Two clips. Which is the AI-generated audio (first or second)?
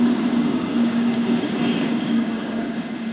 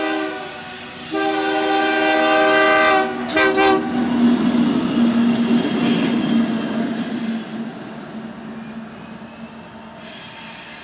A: first